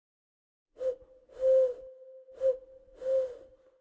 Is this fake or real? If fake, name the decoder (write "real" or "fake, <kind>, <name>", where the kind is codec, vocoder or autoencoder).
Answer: real